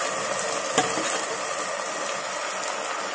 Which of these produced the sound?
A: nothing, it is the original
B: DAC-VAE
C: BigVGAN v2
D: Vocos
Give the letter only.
A